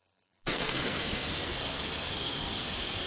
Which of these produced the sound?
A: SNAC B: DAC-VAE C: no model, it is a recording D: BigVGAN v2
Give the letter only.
A